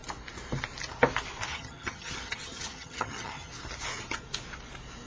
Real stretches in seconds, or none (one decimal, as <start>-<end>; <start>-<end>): 0.0-1.5; 3.5-5.1